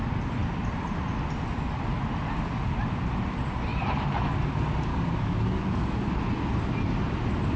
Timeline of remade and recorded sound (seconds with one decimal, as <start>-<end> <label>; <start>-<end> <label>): 0.0-4.9 recorded; 4.9-6.1 remade; 6.1-7.6 recorded